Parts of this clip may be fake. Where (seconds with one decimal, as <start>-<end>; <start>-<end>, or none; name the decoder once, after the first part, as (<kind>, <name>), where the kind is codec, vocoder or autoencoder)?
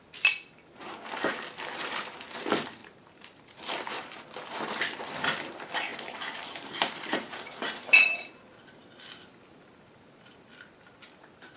2.8-3.9 (vocoder, BigVGAN v2); 5.9-8.3